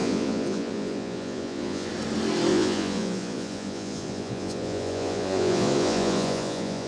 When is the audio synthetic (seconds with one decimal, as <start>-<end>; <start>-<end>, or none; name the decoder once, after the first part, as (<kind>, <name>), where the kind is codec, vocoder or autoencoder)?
0.0-1.9 (vocoder, Vocos); 2.5-6.9